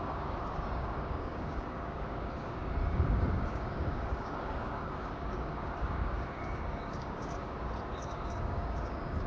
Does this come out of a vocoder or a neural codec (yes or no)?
yes